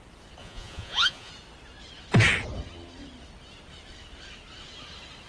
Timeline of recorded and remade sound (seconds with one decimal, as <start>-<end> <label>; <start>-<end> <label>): 0.0-0.4 recorded; 0.4-1.3 remade; 1.3-5.3 recorded